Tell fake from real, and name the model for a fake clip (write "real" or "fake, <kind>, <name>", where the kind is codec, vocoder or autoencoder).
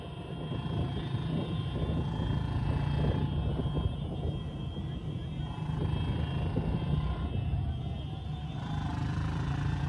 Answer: real